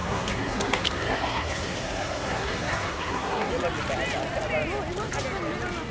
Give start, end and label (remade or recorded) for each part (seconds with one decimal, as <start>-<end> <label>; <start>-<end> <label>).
0.0-3.5 remade; 3.5-5.9 recorded